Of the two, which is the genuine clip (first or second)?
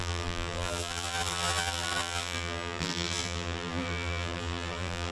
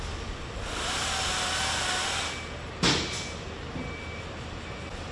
second